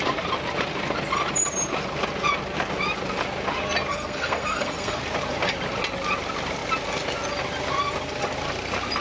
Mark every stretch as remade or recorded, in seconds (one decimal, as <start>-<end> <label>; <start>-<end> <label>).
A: 0.0-3.9 recorded; 3.9-5.0 remade; 5.0-9.0 recorded